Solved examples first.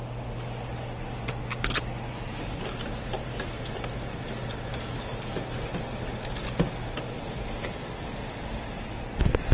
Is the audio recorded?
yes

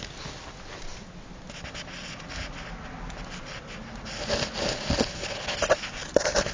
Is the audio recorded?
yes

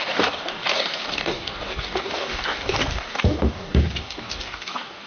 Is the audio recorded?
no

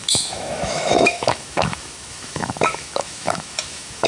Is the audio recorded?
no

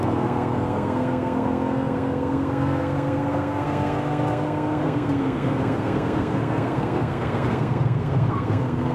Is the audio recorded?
no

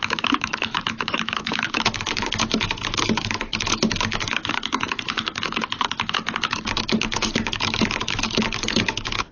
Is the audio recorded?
no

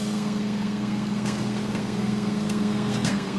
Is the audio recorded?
no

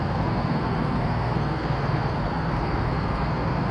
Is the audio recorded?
no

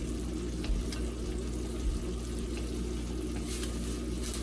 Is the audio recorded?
yes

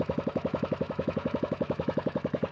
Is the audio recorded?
no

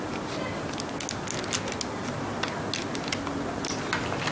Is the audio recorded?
yes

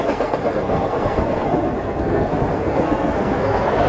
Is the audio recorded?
no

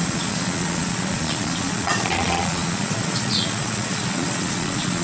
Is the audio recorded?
no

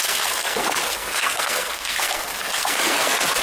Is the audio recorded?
no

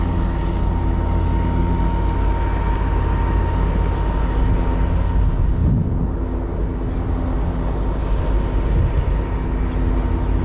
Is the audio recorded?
yes